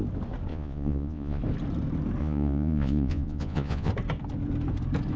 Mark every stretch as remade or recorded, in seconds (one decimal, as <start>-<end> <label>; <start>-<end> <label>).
0.0-0.5 recorded; 0.5-1.4 remade; 1.4-2.2 recorded; 2.2-3.9 remade; 3.9-5.2 recorded